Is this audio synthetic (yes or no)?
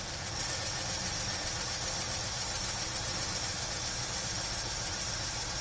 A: no